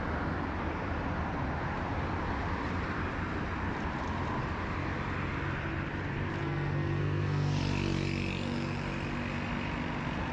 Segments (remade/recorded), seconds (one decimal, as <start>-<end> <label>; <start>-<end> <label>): 0.0-6.4 recorded; 6.4-7.6 remade; 7.6-10.3 recorded